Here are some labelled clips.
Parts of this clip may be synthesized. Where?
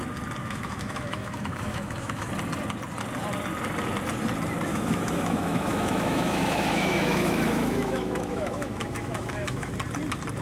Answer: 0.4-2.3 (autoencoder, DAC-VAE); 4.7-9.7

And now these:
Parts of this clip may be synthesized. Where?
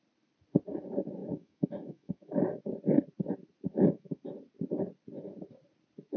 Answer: 1.2-2.6 (autoencoder, DAC-VAE); 3.7-4.2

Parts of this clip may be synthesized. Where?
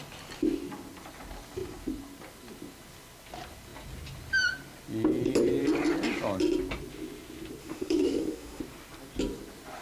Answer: 7.6-8.6 (autoencoder, DAC-VAE)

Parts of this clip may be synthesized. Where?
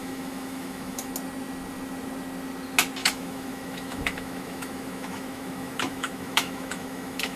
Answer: 0.0-1.1 (autoencoder, DAC-VAE); 3.0-7.4